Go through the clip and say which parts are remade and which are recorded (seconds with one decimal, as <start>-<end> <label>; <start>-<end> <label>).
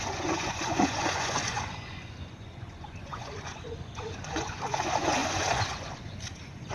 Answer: 0.0-6.7 remade